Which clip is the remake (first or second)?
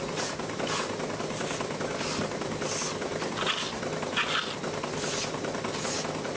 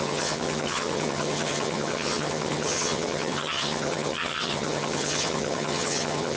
second